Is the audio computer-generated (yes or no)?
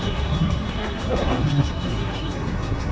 yes